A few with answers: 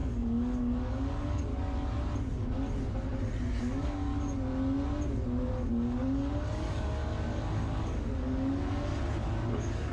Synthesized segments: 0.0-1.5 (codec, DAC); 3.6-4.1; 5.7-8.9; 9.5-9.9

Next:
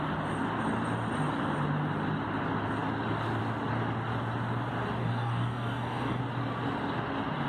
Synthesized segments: 5.0-6.2 (codec, DAC)

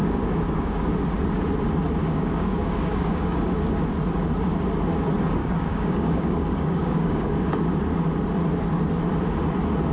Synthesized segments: 0.0-0.9 (codec, DAC); 2.0-3.2; 5.4-7.6

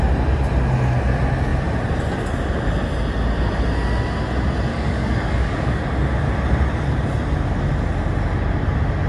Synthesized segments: 4.7-5.8 (codec, DAC)

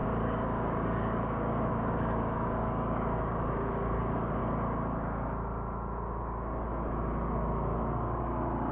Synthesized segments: 0.0-4.4 (codec, DAC)

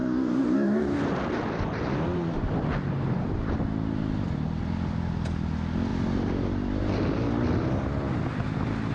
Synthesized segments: 0.0-1.0 (codec, DAC)